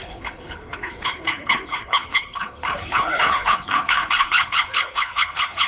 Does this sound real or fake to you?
fake